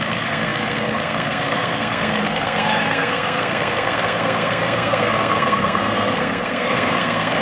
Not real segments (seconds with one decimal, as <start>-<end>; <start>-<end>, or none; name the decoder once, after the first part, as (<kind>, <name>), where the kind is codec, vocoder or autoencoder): 0.0-7.4 (codec, SNAC)